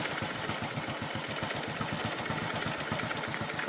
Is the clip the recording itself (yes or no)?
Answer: yes